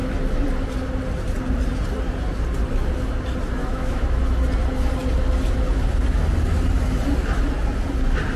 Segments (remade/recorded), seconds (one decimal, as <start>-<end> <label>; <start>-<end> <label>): 0.0-3.6 recorded; 3.6-4.2 remade; 4.2-8.4 recorded